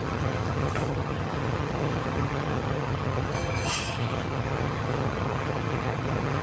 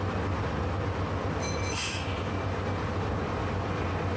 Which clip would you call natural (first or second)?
second